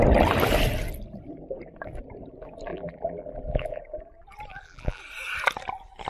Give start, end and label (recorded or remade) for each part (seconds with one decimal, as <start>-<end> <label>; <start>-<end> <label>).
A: 0.0-2.7 recorded; 2.7-3.8 remade; 3.8-4.5 recorded; 4.5-5.0 remade; 5.0-6.1 recorded